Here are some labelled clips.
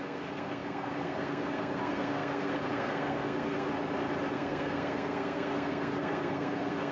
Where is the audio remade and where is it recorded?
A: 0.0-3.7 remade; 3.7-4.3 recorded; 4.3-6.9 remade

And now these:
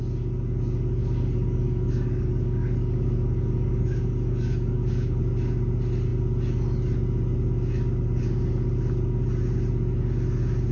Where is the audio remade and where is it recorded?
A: 0.0-1.0 recorded; 1.0-5.2 remade; 5.2-10.7 recorded

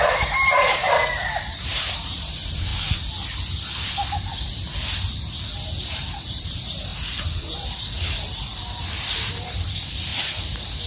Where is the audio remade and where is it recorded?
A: 0.0-2.7 remade; 2.7-5.9 recorded; 5.9-10.9 remade

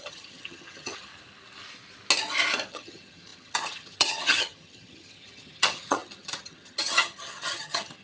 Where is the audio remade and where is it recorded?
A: 0.0-1.1 remade; 1.1-2.7 recorded; 2.7-8.0 remade

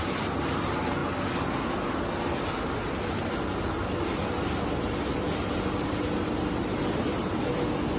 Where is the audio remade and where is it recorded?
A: 0.0-5.1 recorded; 5.1-7.4 remade; 7.4-8.0 recorded